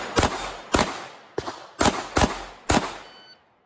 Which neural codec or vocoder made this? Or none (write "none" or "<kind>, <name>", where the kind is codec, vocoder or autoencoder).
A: none